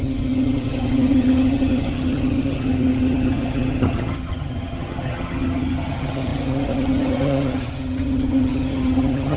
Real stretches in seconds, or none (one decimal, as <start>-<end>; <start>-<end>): none